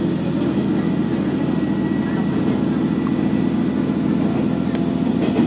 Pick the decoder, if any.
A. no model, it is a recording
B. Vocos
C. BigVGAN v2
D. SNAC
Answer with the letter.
A